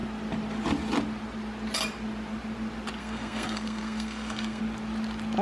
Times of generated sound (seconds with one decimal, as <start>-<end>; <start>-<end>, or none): 3.0-4.6